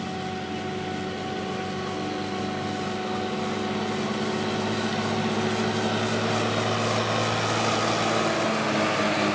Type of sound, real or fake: real